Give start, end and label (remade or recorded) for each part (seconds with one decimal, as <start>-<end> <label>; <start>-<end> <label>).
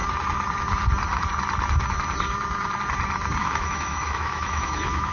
0.0-3.4 recorded; 3.4-5.1 remade